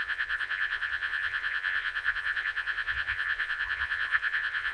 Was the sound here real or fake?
fake